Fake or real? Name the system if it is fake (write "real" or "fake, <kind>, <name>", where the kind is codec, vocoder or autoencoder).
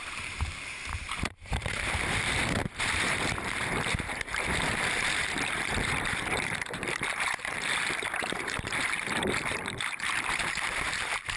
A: fake, vocoder, BigVGAN v2